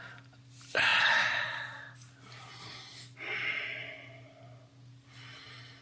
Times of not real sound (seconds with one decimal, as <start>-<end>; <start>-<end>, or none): none